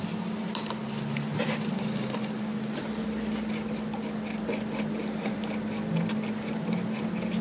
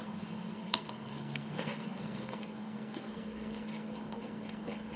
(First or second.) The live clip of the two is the first